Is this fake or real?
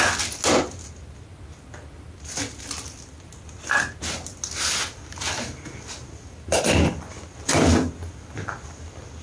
real